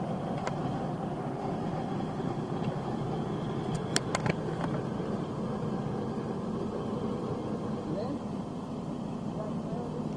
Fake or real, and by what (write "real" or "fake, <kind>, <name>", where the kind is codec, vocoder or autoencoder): fake, vocoder, BigVGAN v2